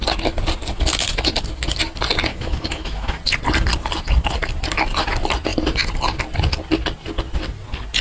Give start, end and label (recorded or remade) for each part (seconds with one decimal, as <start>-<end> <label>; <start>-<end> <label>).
0.0-2.3 recorded; 2.3-3.2 remade; 3.2-8.0 recorded